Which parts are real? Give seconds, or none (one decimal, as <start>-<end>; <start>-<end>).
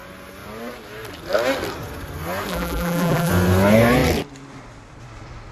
0.0-2.5; 3.3-5.5